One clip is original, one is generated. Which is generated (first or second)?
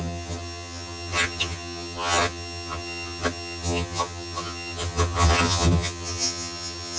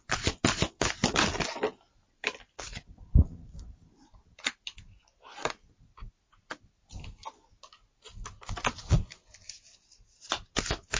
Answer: first